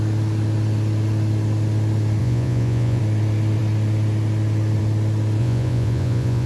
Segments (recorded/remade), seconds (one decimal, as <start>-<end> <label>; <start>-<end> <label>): 0.0-2.2 recorded; 2.2-3.0 remade; 3.0-5.4 recorded; 5.4-6.5 remade